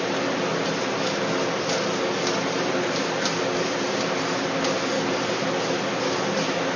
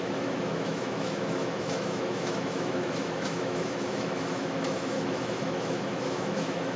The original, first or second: first